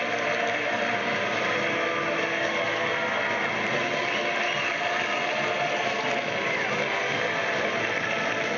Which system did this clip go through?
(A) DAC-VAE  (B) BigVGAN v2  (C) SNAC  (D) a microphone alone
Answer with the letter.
D